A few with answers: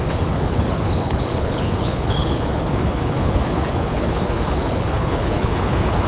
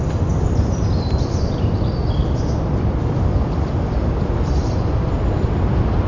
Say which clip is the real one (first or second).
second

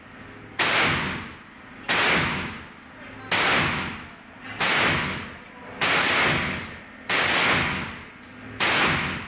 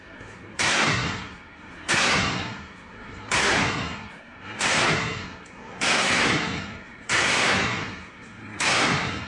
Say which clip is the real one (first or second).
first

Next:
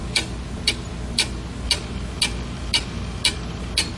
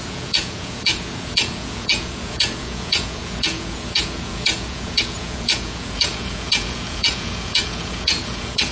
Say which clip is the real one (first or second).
first